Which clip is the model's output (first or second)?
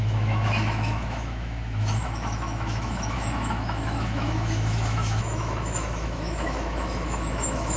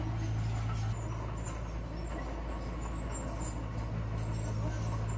first